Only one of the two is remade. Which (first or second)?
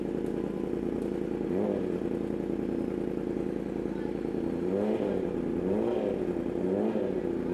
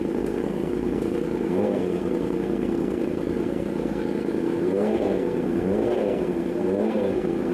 second